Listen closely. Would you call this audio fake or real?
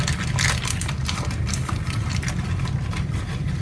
real